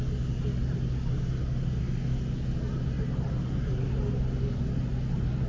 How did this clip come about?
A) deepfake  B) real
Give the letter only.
B